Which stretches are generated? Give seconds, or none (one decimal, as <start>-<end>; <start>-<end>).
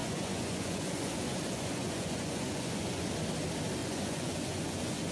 0.0-3.1; 3.8-5.1